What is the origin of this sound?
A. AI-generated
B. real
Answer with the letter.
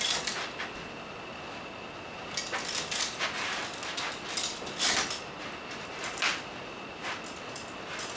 B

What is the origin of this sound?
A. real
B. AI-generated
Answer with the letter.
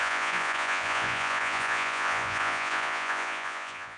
B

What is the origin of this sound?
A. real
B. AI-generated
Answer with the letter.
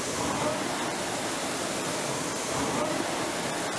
B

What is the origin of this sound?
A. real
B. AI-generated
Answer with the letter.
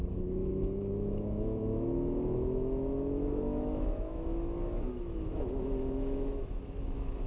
B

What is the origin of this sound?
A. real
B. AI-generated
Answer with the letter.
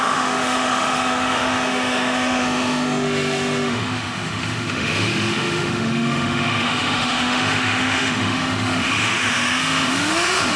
B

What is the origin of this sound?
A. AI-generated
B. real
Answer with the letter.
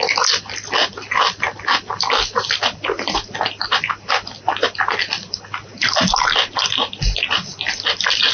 B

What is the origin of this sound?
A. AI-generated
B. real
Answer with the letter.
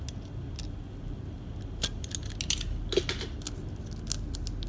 B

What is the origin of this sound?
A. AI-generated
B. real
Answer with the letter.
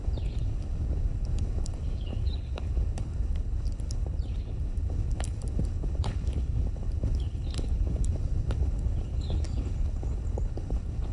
A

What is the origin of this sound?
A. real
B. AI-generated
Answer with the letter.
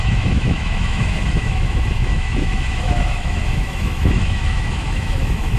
B